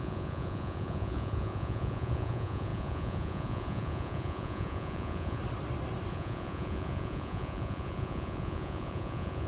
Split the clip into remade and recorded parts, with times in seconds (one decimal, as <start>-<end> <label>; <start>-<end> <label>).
0.0-5.4 remade; 5.4-6.1 recorded; 6.1-9.5 remade